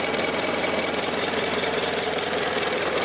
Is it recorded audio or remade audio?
remade